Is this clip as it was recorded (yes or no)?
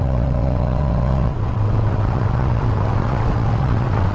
no